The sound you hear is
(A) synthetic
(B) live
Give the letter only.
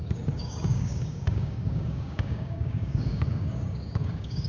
A